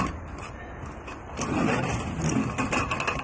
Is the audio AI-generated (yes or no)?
no